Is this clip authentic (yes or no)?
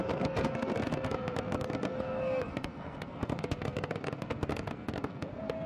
no